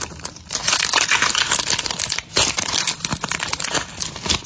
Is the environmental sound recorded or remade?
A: recorded